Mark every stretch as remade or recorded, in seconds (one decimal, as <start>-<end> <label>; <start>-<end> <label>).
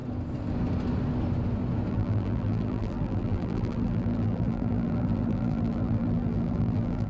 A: 0.0-1.9 recorded; 1.9-7.1 remade